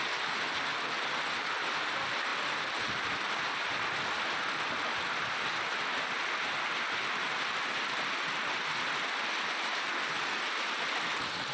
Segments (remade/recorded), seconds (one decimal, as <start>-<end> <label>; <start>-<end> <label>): 0.0-11.5 recorded